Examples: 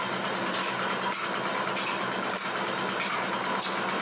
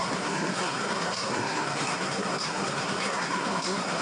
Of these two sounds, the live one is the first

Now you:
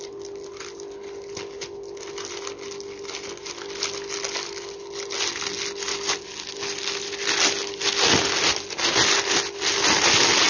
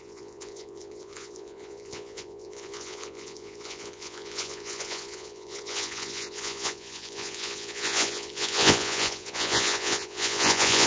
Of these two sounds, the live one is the first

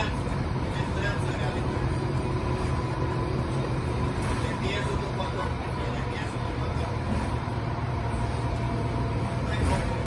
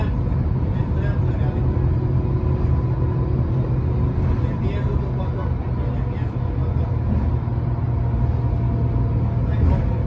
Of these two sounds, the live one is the second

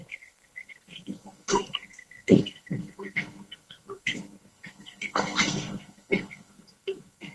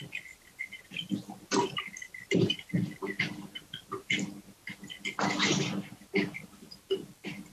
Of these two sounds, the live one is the second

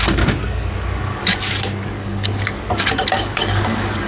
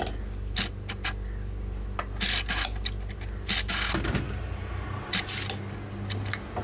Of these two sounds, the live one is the second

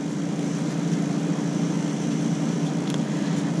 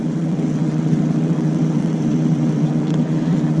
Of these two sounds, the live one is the first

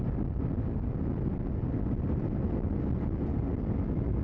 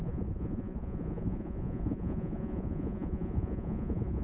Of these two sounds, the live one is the first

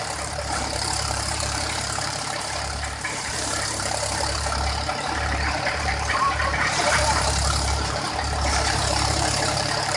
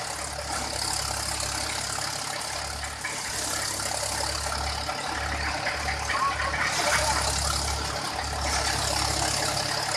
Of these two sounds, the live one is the second